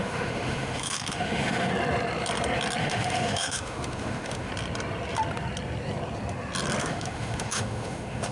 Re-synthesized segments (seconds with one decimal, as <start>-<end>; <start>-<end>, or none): 0.0-1.7; 2.8-4.5; 6.8-8.3